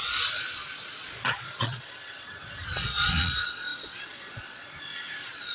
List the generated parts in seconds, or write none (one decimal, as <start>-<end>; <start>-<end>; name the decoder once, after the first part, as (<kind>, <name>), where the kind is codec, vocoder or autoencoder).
0.0-5.5 (vocoder, Vocos)